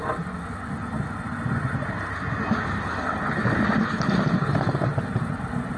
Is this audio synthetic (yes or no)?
no